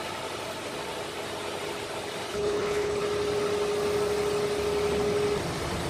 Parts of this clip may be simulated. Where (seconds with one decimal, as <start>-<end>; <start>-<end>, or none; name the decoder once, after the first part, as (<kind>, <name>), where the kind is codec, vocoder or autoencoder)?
2.3-3.0 (codec, HILCodec)